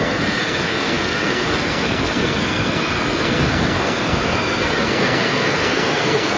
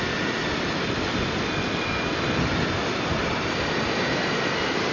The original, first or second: second